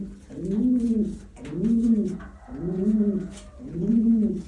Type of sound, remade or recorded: recorded